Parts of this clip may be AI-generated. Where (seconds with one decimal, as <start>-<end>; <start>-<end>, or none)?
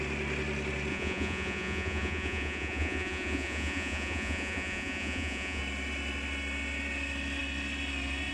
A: 0.9-5.6